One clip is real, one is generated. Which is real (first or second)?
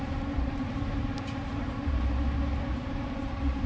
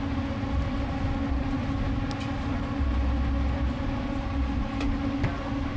second